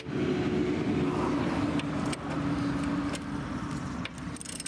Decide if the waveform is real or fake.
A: real